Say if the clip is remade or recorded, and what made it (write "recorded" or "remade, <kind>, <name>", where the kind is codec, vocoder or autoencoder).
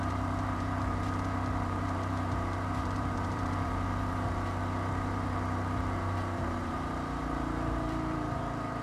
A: remade, vocoder, BigVGAN v2